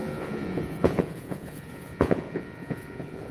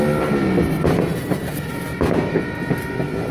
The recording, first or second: second